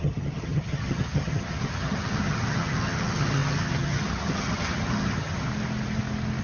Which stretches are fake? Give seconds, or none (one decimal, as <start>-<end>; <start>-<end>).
0.0-5.5